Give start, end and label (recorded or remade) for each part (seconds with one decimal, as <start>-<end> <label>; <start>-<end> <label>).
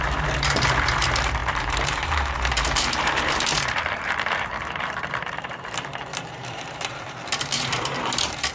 0.0-8.5 remade